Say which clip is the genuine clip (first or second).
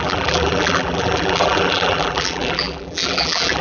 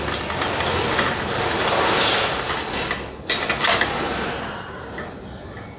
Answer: second